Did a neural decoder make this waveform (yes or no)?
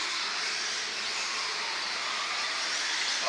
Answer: no